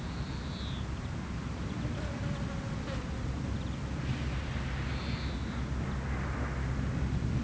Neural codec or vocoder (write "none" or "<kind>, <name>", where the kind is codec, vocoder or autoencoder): none